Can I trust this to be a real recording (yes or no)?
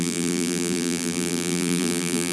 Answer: no